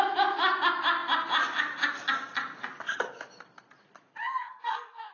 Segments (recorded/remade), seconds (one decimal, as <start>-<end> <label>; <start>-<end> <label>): 0.0-4.2 recorded; 4.2-5.1 remade